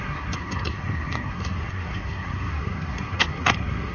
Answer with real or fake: fake